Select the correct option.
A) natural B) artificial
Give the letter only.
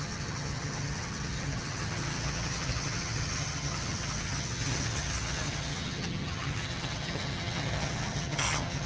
B